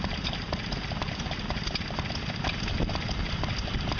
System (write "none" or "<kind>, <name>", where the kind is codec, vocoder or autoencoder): none